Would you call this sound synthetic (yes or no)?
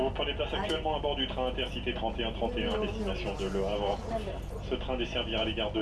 no